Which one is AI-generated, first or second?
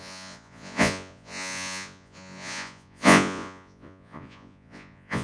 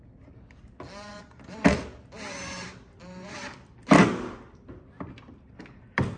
first